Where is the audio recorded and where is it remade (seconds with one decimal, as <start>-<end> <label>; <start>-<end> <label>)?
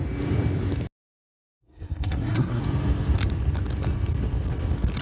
0.0-1.1 recorded; 1.1-2.6 remade; 2.6-5.0 recorded